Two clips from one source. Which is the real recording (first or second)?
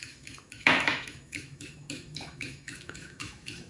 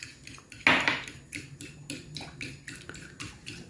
second